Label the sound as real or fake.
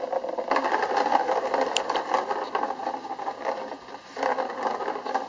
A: real